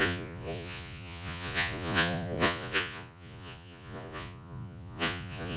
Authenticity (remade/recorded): remade